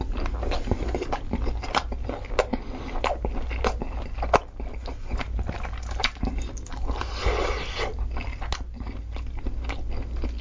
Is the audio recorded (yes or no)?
yes